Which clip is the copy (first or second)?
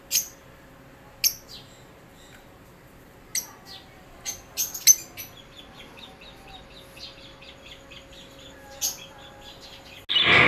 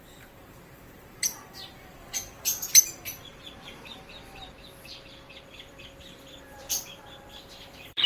second